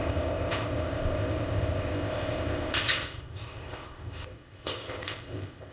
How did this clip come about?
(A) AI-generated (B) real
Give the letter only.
A